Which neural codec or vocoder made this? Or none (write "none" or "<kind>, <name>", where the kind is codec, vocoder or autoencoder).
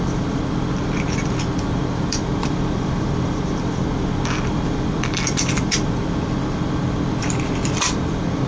vocoder, BigVGAN v2